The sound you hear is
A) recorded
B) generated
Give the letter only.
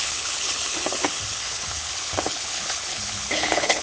B